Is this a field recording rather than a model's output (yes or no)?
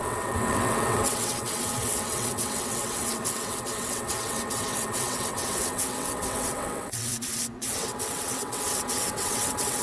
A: no